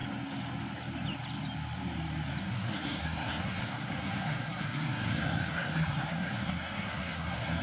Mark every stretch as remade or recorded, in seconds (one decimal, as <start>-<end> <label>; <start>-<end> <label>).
0.0-2.4 recorded; 2.4-7.6 remade

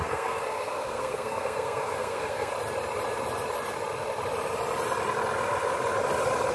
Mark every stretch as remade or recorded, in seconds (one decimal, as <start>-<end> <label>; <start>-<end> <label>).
0.0-2.5 remade; 2.5-6.5 recorded